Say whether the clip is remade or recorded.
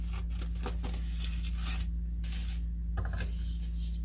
recorded